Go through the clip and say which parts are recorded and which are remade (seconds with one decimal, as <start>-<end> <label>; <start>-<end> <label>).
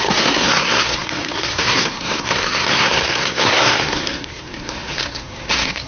0.0-5.9 remade